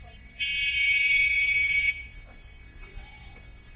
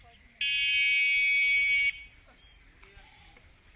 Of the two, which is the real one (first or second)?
second